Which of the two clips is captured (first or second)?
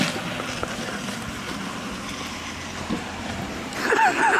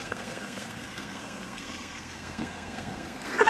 first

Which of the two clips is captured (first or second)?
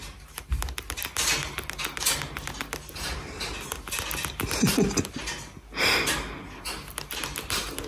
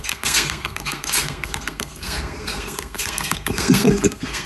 first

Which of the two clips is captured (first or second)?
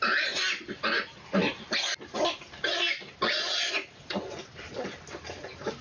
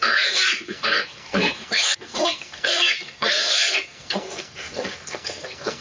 first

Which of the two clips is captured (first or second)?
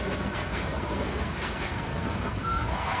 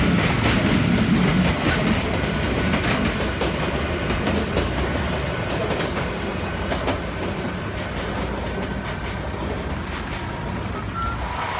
second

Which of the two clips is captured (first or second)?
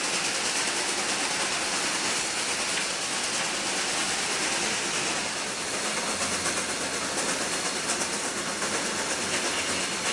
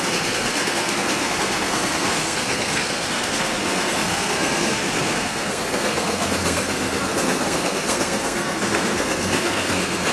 first